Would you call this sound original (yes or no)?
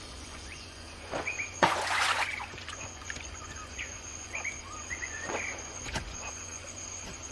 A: no